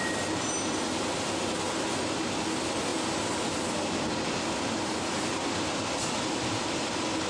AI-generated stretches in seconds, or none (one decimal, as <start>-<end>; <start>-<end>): none